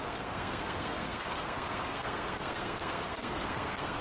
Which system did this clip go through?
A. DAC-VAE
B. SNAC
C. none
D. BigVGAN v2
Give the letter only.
B